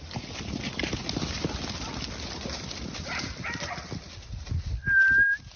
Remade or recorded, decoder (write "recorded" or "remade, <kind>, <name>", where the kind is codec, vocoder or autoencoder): recorded